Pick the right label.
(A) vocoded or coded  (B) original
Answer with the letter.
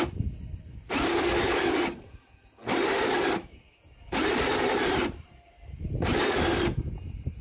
B